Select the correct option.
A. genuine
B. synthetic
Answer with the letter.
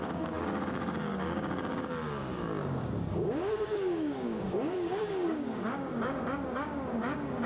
B